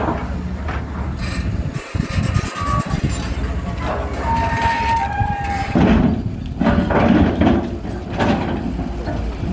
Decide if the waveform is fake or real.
real